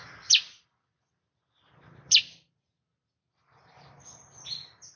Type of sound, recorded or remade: recorded